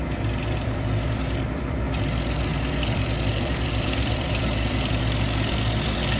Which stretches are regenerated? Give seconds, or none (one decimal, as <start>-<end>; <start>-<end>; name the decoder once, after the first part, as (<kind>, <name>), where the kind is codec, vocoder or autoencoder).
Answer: 0.0-6.2 (vocoder, BigVGAN v2)

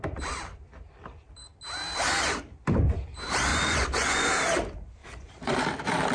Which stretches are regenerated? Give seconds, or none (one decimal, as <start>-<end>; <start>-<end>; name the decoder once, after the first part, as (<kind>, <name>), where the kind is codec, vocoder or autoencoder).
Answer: 3.5-4.3 (vocoder, Vocos); 5.0-5.5

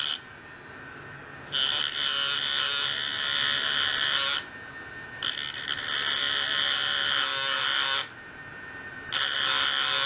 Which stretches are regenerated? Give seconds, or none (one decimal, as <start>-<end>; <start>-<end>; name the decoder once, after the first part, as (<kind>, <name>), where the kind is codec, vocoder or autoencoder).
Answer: none

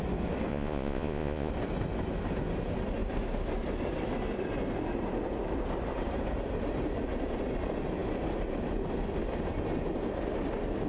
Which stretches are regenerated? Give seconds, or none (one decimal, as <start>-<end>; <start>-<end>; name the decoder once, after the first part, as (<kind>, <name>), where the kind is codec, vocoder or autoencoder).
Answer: 0.5-1.5 (vocoder, Vocos)

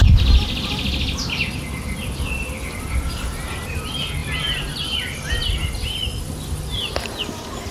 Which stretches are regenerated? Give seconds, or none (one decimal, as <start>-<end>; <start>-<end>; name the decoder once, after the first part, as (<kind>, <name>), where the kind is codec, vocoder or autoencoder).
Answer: 4.2-5.3 (vocoder, BigVGAN v2)

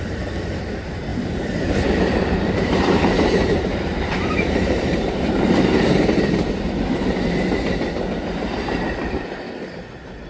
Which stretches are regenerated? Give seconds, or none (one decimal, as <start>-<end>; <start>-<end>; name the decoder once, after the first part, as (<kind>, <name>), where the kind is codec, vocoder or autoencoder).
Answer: 1.1-6.0 (vocoder, BigVGAN v2)

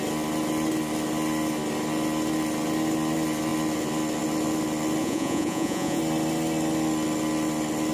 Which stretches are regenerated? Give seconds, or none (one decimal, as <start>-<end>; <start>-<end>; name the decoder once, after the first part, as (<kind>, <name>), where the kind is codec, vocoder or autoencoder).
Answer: 5.0-6.0 (vocoder, Vocos)

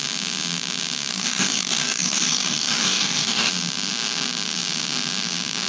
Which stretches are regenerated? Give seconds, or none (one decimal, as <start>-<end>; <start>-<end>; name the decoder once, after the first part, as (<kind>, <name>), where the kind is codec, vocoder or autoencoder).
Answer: 1.1-3.5 (codec, DAC)